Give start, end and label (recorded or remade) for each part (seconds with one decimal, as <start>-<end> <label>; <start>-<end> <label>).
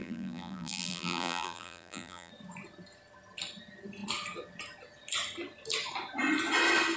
0.0-2.3 remade; 2.3-7.0 recorded